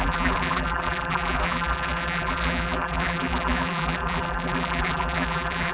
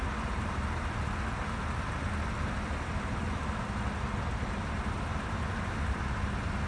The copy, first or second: first